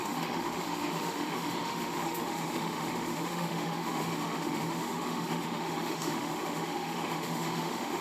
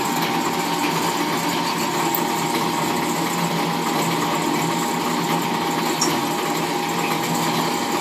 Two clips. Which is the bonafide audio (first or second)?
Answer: second